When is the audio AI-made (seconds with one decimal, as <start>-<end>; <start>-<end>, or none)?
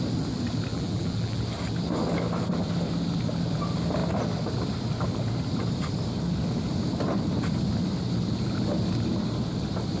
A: 0.7-1.4